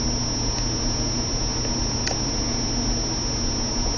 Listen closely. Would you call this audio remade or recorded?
recorded